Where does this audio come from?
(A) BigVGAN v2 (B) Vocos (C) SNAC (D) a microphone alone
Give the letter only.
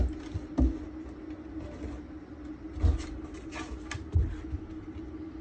D